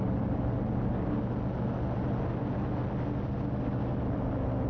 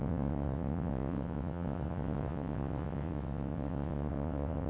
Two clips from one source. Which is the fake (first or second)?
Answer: second